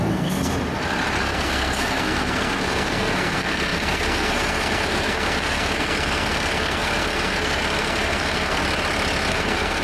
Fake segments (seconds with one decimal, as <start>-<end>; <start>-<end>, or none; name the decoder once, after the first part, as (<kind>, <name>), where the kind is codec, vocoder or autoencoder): 0.0-0.5 (codec, SNAC); 1.2-8.6; 9.3-9.8